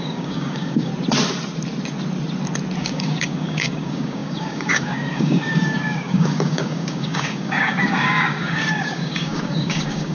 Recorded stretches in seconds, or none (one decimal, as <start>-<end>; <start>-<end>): 0.9-2.8